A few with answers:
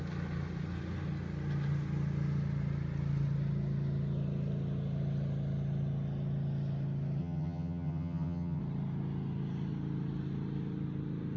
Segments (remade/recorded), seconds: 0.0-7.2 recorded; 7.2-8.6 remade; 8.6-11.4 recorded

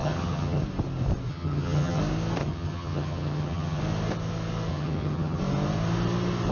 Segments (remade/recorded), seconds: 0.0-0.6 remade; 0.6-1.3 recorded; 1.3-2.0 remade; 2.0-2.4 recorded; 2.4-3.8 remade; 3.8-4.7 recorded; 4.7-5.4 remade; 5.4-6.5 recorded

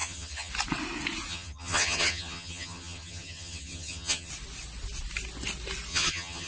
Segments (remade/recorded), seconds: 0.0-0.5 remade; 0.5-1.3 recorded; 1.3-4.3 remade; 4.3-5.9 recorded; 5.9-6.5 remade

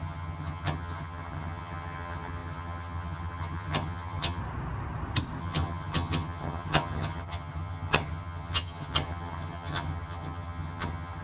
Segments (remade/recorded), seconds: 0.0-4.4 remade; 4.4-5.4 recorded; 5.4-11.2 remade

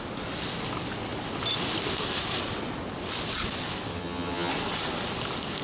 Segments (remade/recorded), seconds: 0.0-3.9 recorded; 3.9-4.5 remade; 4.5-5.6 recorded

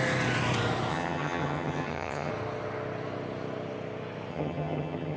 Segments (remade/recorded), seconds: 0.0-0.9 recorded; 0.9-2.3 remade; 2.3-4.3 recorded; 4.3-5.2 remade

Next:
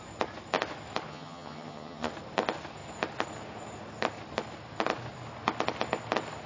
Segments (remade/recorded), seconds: 0.0-1.1 recorded; 1.1-2.1 remade; 2.1-6.5 recorded